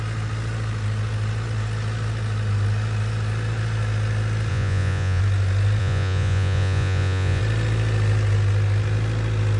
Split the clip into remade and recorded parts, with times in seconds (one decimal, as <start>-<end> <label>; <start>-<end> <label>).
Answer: 0.0-4.5 recorded; 4.5-5.2 remade; 5.2-5.8 recorded; 5.8-7.4 remade; 7.4-9.6 recorded